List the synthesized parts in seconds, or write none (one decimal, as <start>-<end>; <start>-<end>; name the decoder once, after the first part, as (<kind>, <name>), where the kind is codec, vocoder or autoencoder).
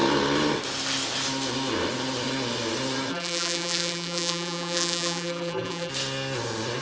3.1-5.9 (vocoder, BigVGAN v2)